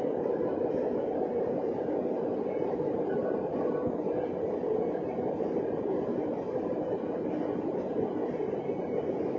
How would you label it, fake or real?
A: real